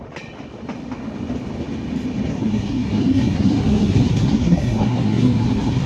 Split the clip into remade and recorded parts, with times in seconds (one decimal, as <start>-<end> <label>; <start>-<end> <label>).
0.0-2.3 recorded; 2.3-5.9 remade